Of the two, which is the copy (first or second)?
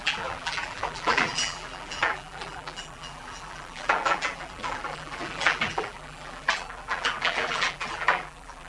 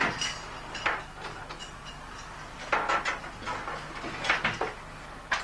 first